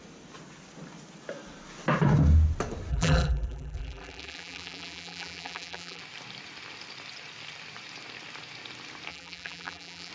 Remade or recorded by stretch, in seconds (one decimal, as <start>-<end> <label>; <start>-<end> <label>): 0.0-2.9 recorded; 2.9-6.0 remade; 6.0-9.1 recorded; 9.1-10.1 remade